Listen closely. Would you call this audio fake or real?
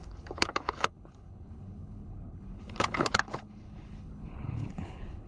fake